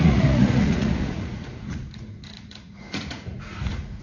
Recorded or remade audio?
remade